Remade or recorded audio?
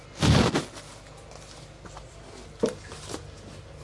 recorded